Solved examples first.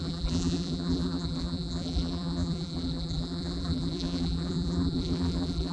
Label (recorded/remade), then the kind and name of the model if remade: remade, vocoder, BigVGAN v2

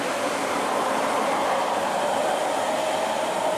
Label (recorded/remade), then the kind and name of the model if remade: recorded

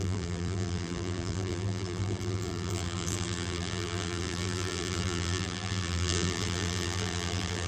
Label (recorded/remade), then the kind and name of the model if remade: remade, vocoder, BigVGAN v2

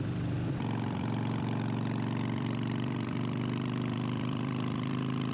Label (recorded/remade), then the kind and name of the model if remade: remade, vocoder, BigVGAN v2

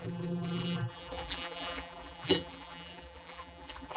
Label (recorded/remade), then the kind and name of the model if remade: remade, vocoder, BigVGAN v2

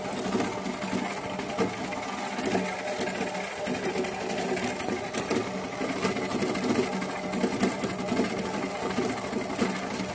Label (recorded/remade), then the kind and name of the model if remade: recorded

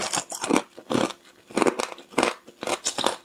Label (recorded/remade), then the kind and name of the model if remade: recorded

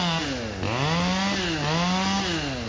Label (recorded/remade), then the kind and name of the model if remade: recorded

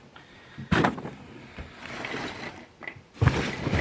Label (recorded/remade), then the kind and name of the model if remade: recorded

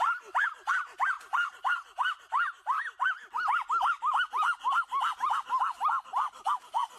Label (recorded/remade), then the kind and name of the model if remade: recorded